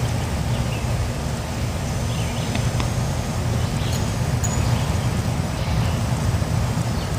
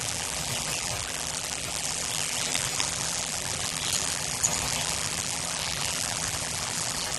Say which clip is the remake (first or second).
second